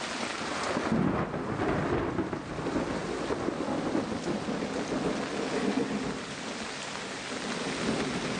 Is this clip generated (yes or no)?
no